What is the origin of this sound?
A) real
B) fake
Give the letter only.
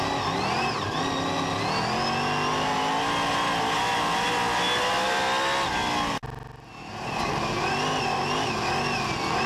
A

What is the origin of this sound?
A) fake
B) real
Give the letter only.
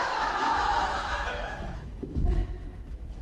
A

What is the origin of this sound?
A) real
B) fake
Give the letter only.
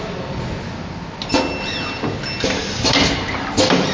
A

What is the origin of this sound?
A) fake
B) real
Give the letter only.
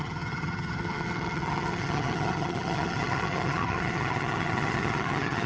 A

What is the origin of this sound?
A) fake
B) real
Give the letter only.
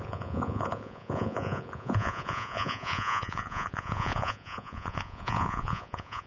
A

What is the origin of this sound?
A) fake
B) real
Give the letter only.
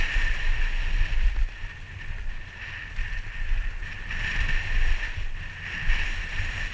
B